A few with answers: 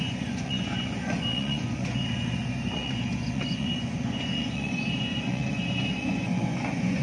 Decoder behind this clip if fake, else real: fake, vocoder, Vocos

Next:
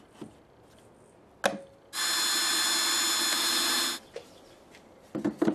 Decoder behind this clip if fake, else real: real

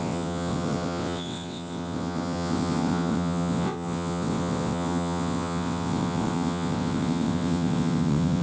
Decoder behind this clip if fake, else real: fake, vocoder, WaveNeXt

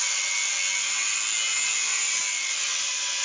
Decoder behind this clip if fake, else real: real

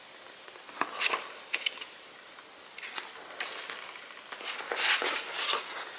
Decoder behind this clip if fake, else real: real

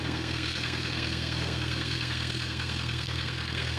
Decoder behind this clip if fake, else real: fake, codec, SNAC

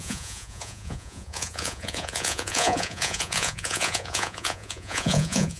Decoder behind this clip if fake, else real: fake, vocoder, Vocos